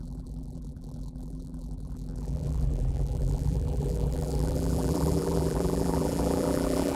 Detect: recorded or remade remade